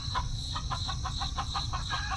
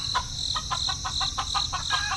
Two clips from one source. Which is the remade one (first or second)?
first